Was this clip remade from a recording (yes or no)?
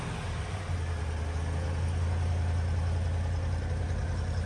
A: no